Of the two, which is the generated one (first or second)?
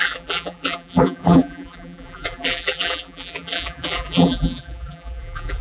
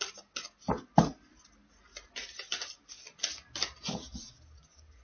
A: first